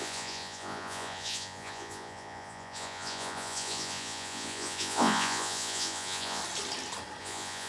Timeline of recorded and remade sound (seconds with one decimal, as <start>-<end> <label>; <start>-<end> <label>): 0.0-6.4 remade; 6.4-7.2 recorded; 7.2-7.7 remade